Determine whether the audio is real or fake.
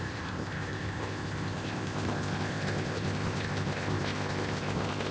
fake